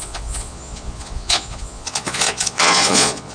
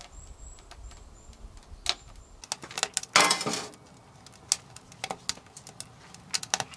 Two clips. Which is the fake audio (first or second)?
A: first